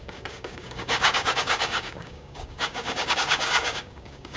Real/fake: fake